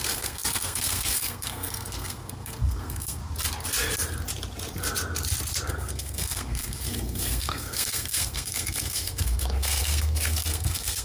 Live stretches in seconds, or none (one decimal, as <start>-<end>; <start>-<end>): 3.2-5.7